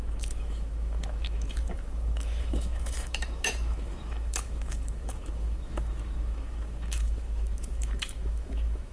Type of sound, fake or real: fake